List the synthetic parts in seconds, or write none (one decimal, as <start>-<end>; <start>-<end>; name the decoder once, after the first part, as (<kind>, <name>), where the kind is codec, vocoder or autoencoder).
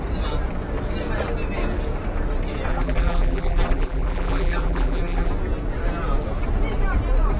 2.7-5.3 (vocoder, BigVGAN v2)